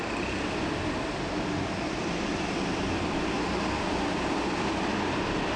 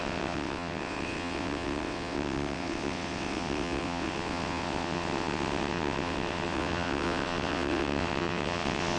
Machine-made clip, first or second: second